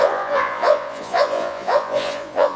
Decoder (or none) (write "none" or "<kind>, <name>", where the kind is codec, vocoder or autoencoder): vocoder, Vocos